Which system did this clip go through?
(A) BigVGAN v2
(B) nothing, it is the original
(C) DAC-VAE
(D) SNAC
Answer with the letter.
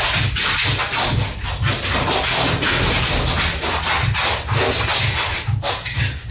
B